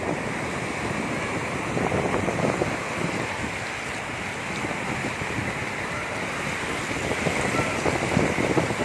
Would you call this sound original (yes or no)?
yes